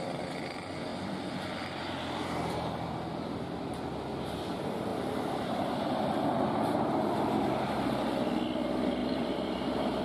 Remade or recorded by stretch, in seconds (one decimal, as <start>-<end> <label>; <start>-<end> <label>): 0.0-0.9 recorded; 0.9-2.7 remade; 2.7-4.9 recorded; 4.9-7.1 remade; 7.1-9.0 recorded; 9.0-10.0 remade

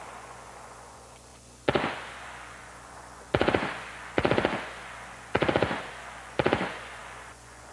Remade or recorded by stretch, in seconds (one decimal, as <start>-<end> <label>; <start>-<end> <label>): 0.0-7.7 remade

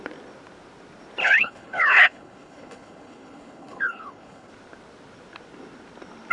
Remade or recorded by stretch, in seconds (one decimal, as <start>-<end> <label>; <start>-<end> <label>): 0.0-1.2 recorded; 1.2-4.5 remade; 4.5-6.3 recorded

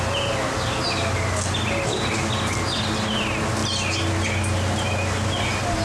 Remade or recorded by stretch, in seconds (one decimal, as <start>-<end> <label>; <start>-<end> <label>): 0.0-5.8 recorded

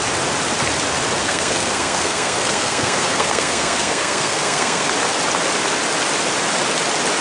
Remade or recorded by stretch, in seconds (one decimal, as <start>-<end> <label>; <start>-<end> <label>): 0.0-1.2 recorded; 1.2-4.9 remade; 4.9-7.2 recorded

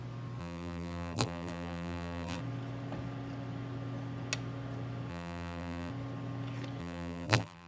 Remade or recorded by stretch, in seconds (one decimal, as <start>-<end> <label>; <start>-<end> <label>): 0.0-0.4 recorded; 0.4-2.4 remade; 2.4-5.1 recorded; 5.1-5.9 remade; 5.9-6.8 recorded; 6.8-7.7 remade